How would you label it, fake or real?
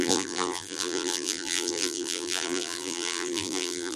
fake